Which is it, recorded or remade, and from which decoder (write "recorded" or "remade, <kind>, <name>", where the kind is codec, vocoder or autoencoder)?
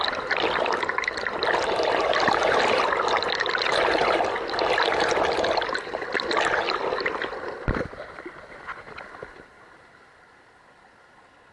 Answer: recorded